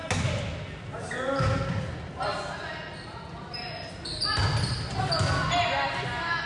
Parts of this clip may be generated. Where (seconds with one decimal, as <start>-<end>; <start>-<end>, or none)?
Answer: none